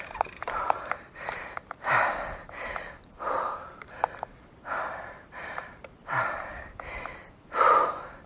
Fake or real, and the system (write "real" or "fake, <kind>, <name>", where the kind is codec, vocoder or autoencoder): fake, vocoder, BigVGAN v2